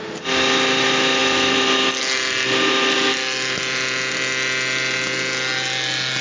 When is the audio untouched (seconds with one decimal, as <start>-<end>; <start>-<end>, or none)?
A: 0.0-6.2